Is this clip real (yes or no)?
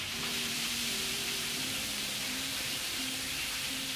no